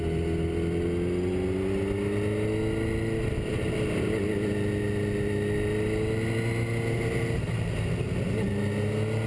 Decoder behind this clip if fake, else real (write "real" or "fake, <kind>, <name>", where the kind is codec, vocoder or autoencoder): real